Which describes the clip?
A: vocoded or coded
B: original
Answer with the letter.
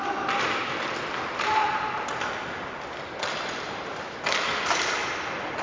B